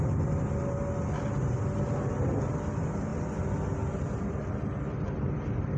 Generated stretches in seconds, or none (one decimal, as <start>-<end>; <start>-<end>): none